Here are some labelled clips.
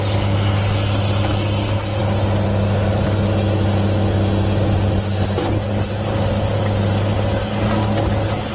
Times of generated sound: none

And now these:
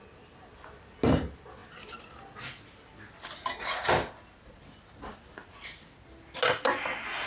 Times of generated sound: none